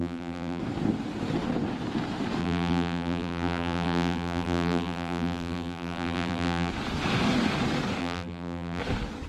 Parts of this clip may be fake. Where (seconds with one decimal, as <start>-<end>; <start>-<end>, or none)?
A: 0.0-0.6; 2.4-6.7; 8.0-8.8